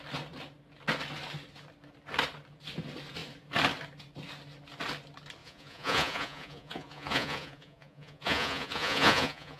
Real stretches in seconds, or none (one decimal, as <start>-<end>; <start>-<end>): 0.0-5.4